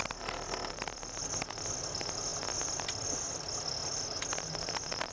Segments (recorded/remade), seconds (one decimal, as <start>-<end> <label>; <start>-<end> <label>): 0.0-5.1 recorded